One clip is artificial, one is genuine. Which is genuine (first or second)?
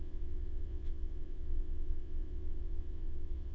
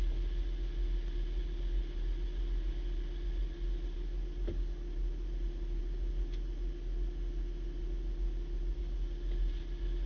second